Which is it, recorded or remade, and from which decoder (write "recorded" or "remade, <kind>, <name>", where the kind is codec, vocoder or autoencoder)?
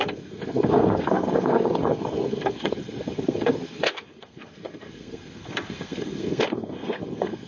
remade, codec, SNAC